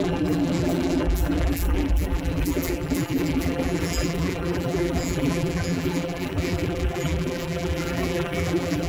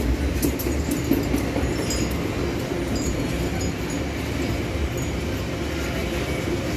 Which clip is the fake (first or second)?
first